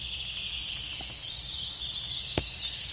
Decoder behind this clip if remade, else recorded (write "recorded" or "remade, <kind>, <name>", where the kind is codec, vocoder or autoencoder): recorded